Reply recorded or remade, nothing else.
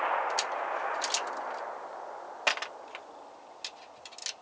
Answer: recorded